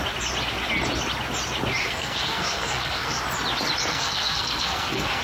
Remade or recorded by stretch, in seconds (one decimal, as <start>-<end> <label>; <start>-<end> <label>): 0.0-1.8 recorded; 1.8-3.2 remade; 3.2-3.9 recorded; 3.9-5.2 remade